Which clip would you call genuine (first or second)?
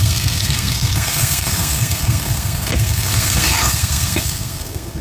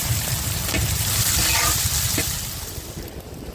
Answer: second